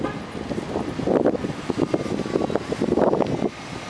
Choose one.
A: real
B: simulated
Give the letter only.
A